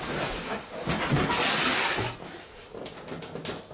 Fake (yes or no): no